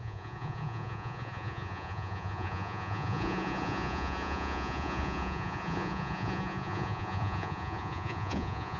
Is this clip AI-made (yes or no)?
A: yes